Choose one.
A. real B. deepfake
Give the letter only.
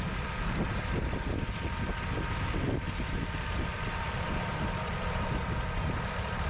B